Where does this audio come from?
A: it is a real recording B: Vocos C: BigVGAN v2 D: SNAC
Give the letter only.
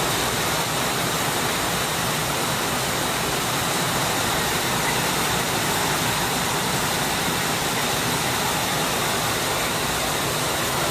A